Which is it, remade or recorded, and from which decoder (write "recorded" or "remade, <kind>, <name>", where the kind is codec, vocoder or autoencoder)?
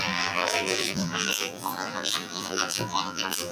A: remade, vocoder, BigVGAN v2